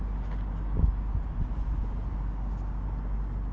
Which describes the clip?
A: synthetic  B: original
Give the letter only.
B